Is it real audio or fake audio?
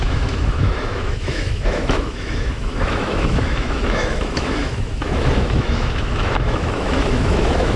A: fake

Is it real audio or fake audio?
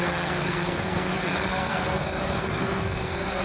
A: fake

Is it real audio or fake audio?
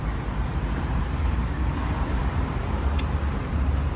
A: fake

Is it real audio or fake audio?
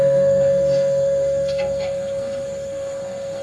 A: fake